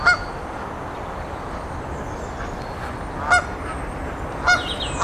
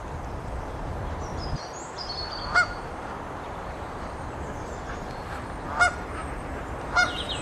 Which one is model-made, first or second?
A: second